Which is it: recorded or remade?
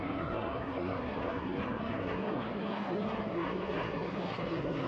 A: remade